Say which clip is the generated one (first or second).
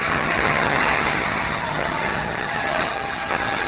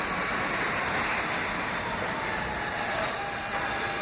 first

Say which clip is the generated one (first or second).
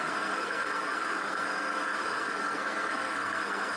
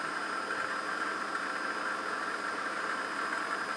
first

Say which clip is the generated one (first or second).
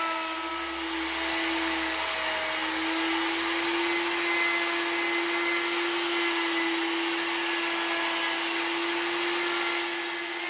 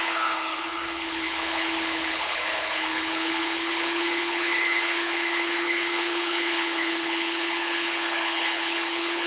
second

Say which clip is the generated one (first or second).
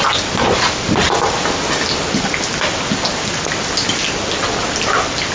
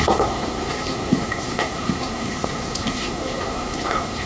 second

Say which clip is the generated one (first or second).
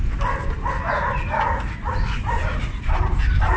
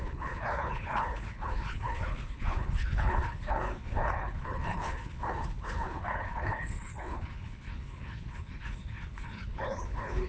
second